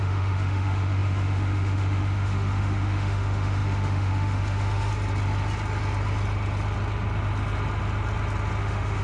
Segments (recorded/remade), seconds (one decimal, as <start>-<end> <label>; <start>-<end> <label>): 0.0-4.9 remade; 4.9-8.6 recorded; 8.6-9.0 remade